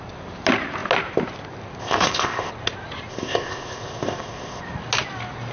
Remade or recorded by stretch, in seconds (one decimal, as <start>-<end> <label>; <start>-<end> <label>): 0.0-1.8 recorded; 1.8-2.5 remade; 2.5-3.1 recorded; 3.1-4.6 remade; 4.6-5.5 recorded